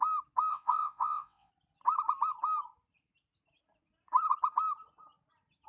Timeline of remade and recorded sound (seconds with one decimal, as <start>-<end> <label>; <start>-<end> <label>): 0.0-0.5 recorded; 0.5-1.5 remade; 1.5-5.7 recorded